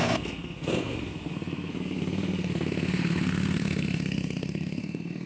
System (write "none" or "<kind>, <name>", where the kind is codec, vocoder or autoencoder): codec, SNAC